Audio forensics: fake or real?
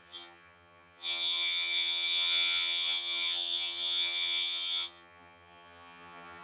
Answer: fake